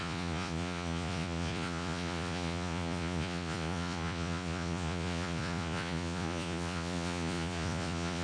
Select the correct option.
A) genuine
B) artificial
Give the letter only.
B